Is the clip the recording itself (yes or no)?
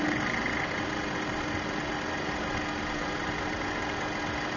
yes